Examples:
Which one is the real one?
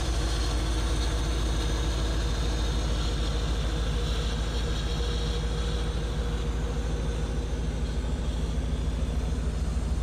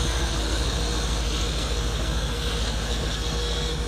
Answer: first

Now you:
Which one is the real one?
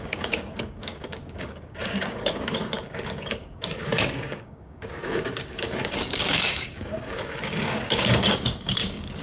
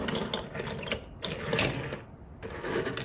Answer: second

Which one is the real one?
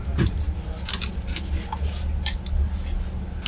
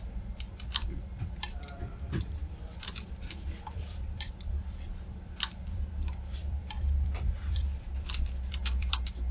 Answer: first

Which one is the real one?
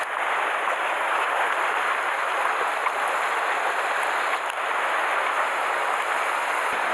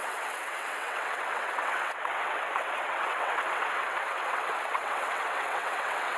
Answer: first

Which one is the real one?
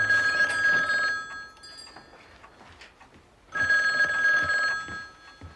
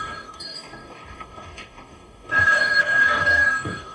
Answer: first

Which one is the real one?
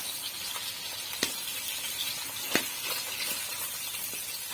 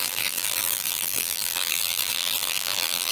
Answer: first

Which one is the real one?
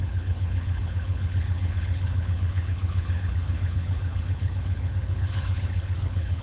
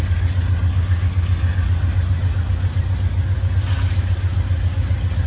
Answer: second